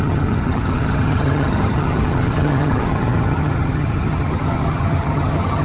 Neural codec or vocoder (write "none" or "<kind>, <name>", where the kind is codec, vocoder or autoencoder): vocoder, HiFi-GAN